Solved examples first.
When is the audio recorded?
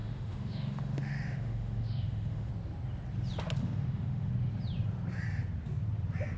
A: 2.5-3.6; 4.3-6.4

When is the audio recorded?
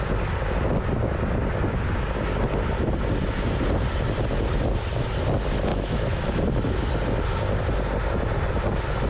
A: 0.0-5.7; 6.2-9.1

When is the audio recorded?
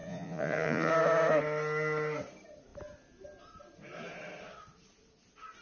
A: 0.9-5.6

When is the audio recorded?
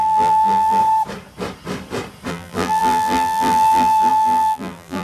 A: 0.8-2.3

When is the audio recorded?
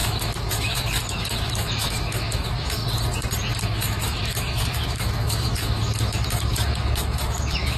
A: 2.8-3.6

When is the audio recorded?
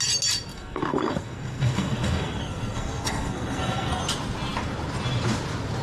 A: 0.0-0.5; 4.0-5.8